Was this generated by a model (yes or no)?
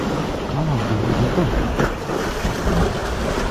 no